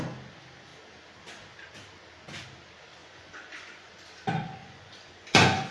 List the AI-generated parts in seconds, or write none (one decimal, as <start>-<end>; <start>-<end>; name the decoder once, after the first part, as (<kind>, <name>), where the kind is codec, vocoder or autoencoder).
3.0-3.9 (vocoder, Vocos); 4.6-5.7